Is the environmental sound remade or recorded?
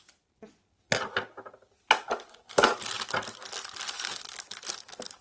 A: recorded